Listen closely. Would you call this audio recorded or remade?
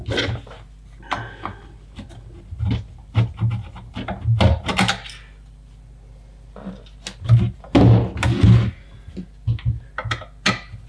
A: recorded